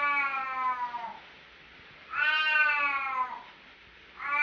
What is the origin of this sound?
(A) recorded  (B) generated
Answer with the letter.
A